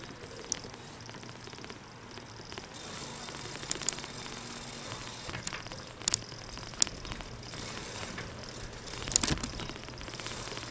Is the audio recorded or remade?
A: recorded